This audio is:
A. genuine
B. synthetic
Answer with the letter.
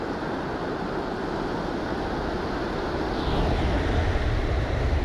A